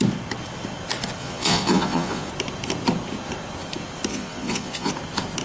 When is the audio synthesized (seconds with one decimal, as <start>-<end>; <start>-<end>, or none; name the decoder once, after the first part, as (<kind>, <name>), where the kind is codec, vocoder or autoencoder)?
1.2-2.3 (vocoder, Vocos); 4.1-4.9